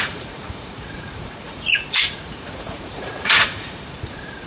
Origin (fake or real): fake